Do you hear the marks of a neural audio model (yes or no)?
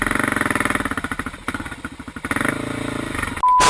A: no